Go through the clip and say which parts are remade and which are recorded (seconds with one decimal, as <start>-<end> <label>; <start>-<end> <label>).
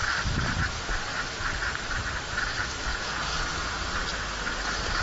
0.0-2.9 recorded; 2.9-3.7 remade; 3.7-5.0 recorded